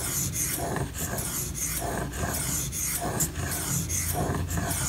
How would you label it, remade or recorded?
recorded